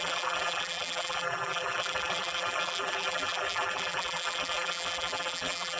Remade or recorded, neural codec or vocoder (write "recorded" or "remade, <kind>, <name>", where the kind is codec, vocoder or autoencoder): remade, vocoder, BigVGAN v2